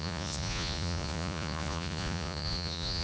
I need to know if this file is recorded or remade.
remade